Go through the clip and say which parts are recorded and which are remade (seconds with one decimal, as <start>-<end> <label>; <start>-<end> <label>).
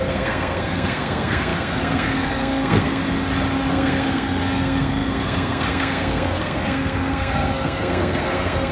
0.0-3.0 remade; 3.0-3.7 recorded; 3.7-8.7 remade